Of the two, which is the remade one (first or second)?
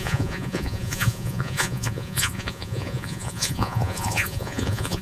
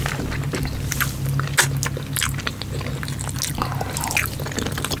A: first